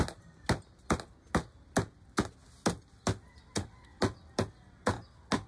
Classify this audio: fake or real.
real